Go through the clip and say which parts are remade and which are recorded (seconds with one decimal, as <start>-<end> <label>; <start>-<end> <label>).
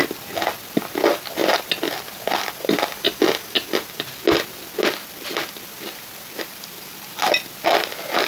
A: 0.0-8.3 recorded